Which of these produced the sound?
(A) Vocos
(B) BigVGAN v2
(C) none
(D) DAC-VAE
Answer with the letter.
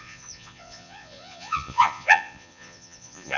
A